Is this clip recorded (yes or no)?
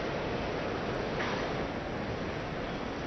yes